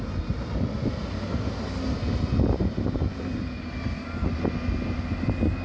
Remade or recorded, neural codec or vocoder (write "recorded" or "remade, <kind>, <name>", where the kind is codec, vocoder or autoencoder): recorded